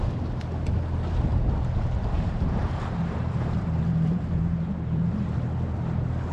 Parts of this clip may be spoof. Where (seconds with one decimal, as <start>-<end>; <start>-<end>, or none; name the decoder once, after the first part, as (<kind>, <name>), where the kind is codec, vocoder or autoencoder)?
1.3-5.1 (vocoder, BigVGAN v2)